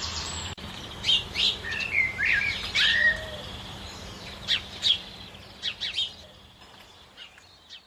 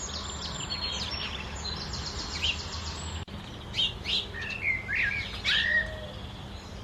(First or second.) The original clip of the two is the second